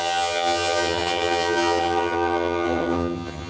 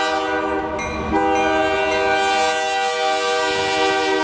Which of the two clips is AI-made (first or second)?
first